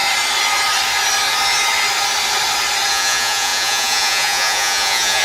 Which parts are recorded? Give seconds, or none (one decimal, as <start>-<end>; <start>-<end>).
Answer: 0.0-2.9